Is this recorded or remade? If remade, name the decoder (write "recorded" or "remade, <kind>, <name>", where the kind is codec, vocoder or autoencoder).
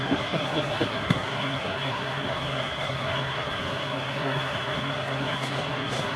remade, codec, SNAC